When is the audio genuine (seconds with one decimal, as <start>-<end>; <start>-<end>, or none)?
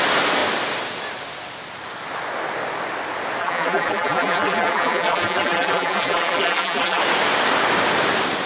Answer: 0.0-3.4; 7.0-8.5